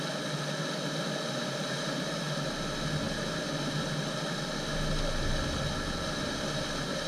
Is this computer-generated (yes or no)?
no